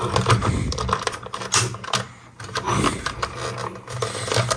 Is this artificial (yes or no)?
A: no